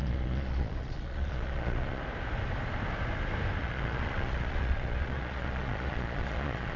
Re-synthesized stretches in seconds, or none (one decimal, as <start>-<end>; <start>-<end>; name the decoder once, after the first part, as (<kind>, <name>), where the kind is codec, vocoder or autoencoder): 0.0-2.0 (vocoder, Vocos); 3.6-6.8